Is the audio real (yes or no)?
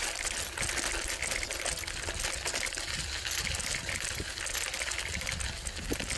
yes